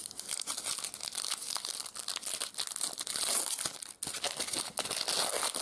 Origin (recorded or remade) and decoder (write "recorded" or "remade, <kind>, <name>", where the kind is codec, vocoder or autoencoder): recorded